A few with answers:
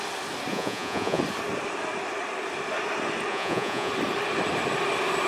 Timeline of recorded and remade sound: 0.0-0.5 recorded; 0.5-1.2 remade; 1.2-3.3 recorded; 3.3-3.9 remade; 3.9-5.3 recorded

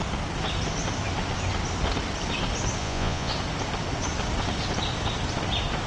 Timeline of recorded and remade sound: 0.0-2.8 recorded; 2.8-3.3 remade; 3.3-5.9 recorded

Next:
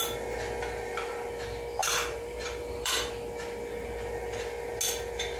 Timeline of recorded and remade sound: 0.0-1.8 recorded; 1.8-3.1 remade; 3.1-5.4 recorded

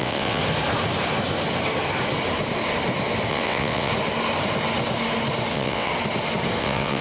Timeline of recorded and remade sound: 0.0-0.4 remade; 0.4-3.3 recorded; 3.3-3.9 remade; 3.9-5.5 recorded; 5.5-5.9 remade; 5.9-6.6 recorded; 6.6-7.0 remade